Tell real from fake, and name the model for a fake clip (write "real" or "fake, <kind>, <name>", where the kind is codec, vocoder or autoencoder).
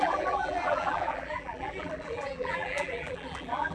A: fake, vocoder, BigVGAN v2